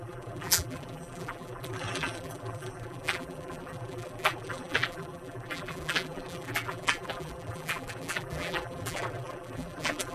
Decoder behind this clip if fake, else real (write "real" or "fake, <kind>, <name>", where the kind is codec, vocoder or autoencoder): fake, vocoder, BigVGAN v2